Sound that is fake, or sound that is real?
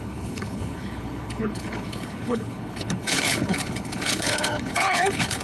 fake